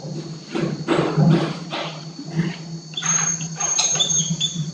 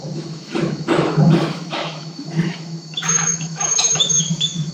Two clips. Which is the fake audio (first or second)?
second